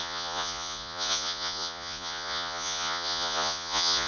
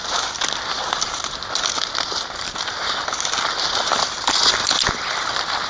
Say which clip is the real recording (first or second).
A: second